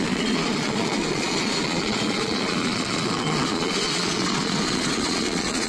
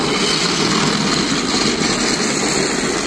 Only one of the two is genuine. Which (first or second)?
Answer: second